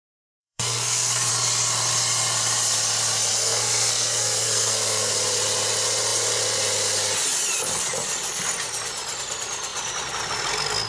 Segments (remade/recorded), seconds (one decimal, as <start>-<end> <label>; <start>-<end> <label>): 0.0-0.4 recorded; 0.4-1.3 remade; 1.3-3.3 recorded; 3.3-5.1 remade; 5.1-10.9 recorded